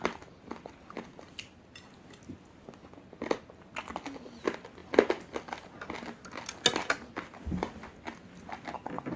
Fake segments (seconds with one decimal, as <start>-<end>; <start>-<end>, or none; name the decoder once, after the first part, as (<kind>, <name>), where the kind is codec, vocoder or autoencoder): none